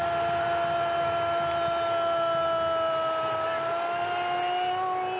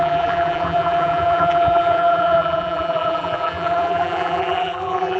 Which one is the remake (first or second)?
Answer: second